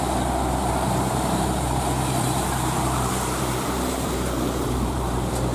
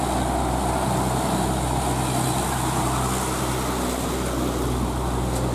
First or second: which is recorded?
second